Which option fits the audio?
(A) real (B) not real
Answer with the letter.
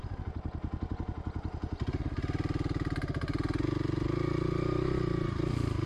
A